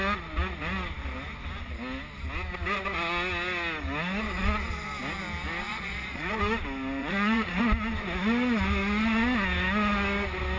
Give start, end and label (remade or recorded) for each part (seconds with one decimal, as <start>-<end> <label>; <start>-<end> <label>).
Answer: 0.0-5.7 recorded; 5.7-6.3 remade; 6.3-7.0 recorded; 7.0-7.6 remade; 7.6-10.6 recorded